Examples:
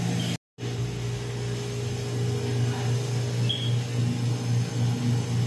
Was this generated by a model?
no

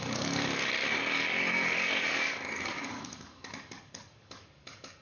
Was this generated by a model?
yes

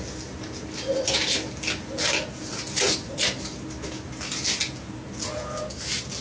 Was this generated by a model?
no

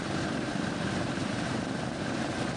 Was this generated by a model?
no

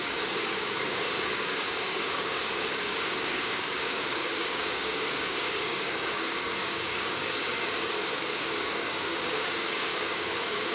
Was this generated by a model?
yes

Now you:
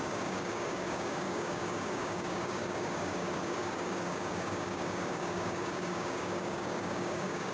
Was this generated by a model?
yes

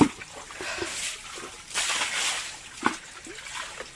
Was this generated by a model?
no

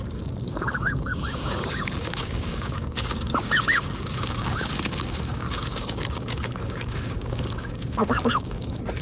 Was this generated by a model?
yes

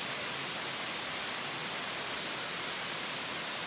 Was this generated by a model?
no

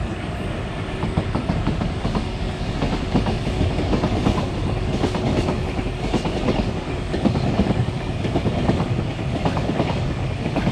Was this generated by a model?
yes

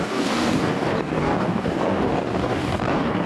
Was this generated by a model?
yes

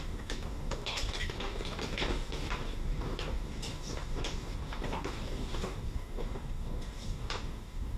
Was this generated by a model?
yes